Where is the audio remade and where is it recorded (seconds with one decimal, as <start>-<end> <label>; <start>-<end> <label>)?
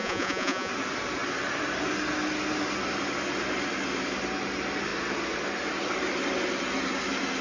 0.0-0.7 remade; 0.7-7.4 recorded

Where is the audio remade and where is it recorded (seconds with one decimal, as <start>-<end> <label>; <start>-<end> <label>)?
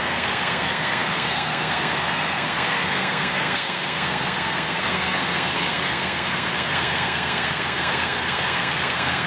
0.0-9.3 remade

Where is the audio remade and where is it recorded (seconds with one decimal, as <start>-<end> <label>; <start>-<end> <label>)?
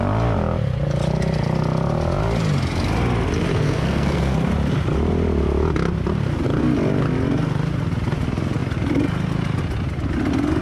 0.0-3.5 recorded; 3.5-4.5 remade; 4.5-10.6 recorded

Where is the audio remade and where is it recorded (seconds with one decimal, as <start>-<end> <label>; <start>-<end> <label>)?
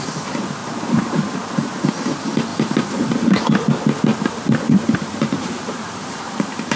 0.0-0.6 recorded; 0.6-1.9 remade; 1.9-2.5 recorded; 2.5-3.1 remade; 3.1-4.1 recorded; 4.1-6.8 remade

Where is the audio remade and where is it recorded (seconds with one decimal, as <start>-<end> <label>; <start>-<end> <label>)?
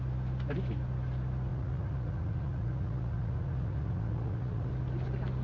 0.0-1.5 recorded; 1.5-4.7 remade; 4.7-5.4 recorded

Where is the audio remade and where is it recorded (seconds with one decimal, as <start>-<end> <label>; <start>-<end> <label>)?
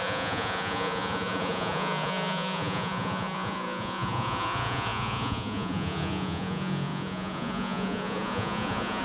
0.0-9.0 remade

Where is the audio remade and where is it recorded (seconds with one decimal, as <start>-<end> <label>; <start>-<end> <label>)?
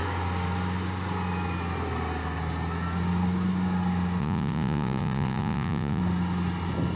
0.0-4.2 recorded; 4.2-6.0 remade; 6.0-7.0 recorded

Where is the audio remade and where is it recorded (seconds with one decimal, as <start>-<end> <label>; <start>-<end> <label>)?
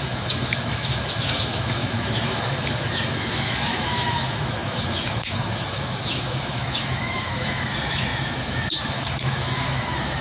0.0-10.2 remade